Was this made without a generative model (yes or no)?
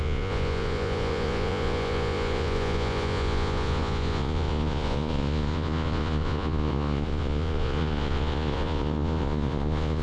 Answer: no